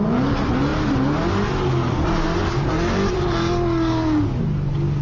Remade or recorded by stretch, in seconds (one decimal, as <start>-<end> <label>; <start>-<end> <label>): 0.0-5.0 recorded